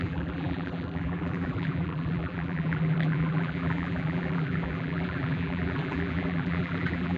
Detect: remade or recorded remade